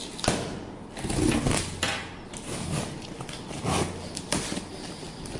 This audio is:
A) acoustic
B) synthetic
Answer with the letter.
A